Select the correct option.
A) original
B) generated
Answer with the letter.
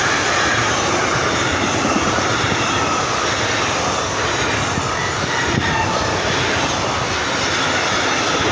A